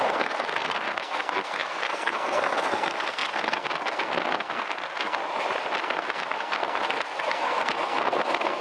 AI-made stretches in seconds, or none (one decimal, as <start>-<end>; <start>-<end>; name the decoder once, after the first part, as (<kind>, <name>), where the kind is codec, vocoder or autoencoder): 0.0-5.2 (codec, SNAC); 5.8-8.6